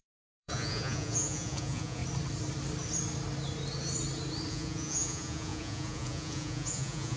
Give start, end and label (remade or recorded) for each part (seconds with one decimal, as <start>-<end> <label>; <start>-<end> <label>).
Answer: 0.0-2.0 remade; 2.0-4.5 recorded; 4.5-7.2 remade